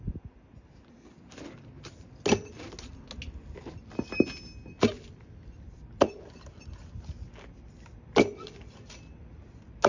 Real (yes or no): yes